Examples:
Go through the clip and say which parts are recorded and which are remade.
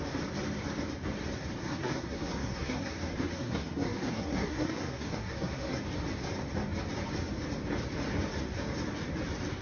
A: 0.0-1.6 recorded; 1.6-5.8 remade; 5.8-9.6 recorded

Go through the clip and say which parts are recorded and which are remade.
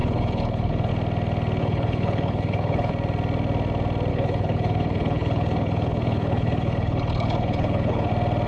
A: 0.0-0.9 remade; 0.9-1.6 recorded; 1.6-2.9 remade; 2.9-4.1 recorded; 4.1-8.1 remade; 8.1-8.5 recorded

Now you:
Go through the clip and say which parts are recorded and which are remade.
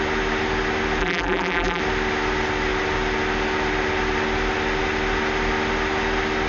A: 0.0-1.0 recorded; 1.0-1.8 remade; 1.8-6.5 recorded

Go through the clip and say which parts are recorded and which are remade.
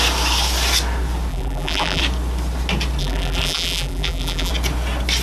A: 0.0-1.3 recorded; 1.3-2.0 remade; 2.0-3.0 recorded; 3.0-4.5 remade; 4.5-5.2 recorded